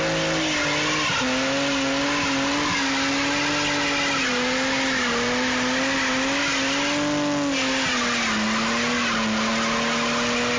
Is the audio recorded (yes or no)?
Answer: yes